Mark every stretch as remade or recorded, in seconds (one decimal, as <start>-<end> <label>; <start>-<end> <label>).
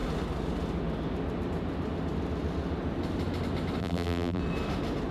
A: 0.0-3.8 recorded; 3.8-4.4 remade; 4.4-5.1 recorded